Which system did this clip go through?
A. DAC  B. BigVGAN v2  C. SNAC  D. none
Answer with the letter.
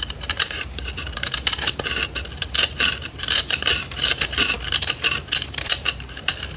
B